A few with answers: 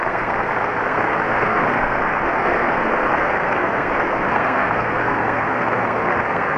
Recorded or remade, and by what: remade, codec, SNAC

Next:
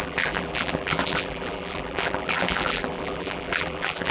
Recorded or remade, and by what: remade, vocoder, BigVGAN v2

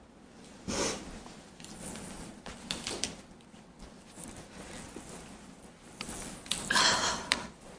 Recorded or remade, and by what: recorded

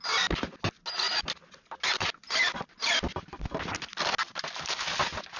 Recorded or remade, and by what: recorded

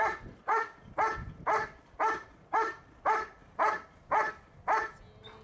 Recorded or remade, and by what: recorded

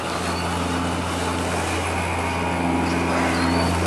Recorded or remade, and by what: recorded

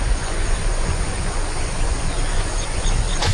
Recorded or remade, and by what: remade, vocoder, Vocos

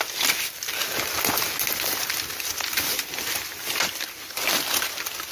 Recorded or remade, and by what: recorded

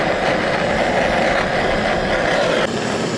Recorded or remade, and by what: recorded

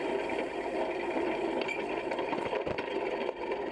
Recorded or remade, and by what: recorded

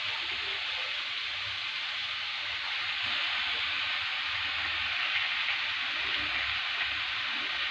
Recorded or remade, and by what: recorded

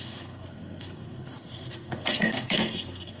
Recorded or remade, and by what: remade, codec, SNAC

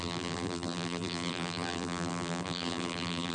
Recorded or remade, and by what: remade, vocoder, BigVGAN v2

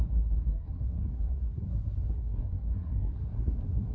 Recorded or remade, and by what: remade, codec, SNAC